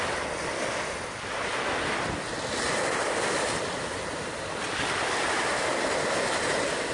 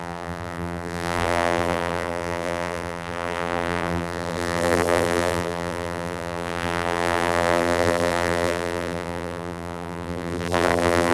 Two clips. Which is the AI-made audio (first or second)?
second